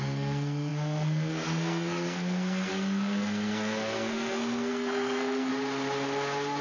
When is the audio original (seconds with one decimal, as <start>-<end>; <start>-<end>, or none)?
5.5-6.6